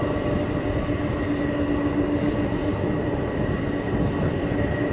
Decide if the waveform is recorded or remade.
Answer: recorded